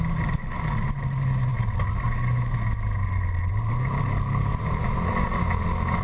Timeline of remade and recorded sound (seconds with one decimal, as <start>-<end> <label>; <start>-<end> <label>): 0.0-6.0 recorded